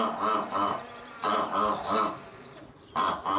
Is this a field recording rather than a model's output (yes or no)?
yes